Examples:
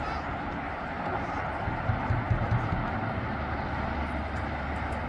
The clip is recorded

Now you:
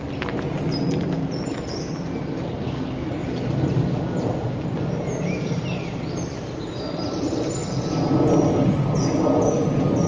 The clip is recorded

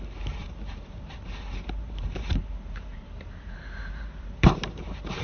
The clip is remade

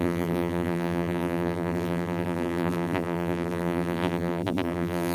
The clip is remade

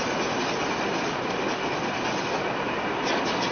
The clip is recorded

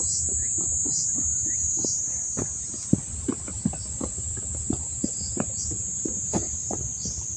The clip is recorded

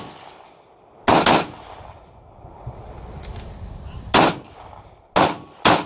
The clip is recorded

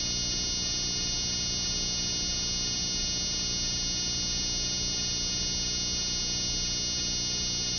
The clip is recorded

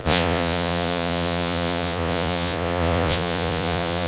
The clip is remade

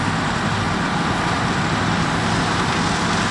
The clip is recorded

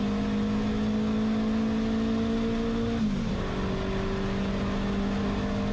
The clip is recorded